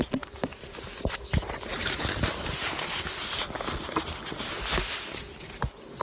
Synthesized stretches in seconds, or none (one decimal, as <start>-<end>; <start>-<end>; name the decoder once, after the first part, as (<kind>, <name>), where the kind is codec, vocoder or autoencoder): none